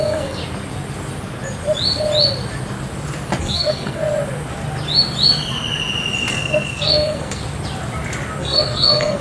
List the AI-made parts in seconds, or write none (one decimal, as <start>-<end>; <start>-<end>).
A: 0.0-0.4; 3.4-4.0; 6.3-7.4; 8.4-9.2